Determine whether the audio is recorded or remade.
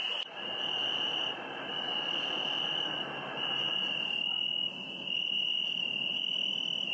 recorded